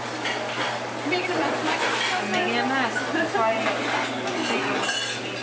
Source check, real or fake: real